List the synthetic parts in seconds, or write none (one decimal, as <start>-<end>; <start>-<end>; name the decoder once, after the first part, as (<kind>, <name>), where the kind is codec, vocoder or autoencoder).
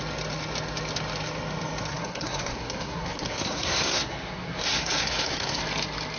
1.9-5.6 (codec, SNAC)